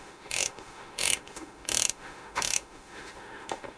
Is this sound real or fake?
fake